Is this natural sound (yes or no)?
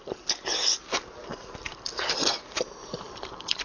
yes